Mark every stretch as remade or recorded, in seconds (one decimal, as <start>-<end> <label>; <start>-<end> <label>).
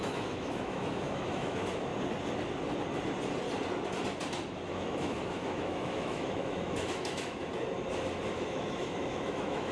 0.0-1.9 remade; 1.9-4.7 recorded; 4.7-7.4 remade; 7.4-8.3 recorded; 8.3-9.7 remade